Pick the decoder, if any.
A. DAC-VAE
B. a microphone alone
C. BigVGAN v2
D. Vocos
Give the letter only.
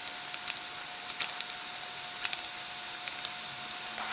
B